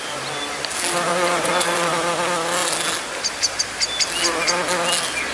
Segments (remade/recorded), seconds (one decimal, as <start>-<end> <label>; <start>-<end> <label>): 0.0-1.1 recorded; 1.1-1.9 remade; 1.9-5.3 recorded